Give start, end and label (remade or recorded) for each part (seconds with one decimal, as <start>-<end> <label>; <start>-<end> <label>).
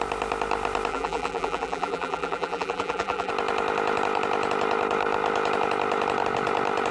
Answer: 0.0-0.9 recorded; 0.9-3.3 remade; 3.3-6.9 recorded